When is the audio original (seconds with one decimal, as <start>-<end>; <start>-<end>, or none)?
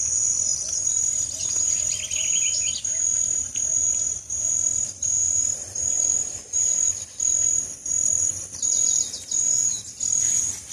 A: 0.0-10.7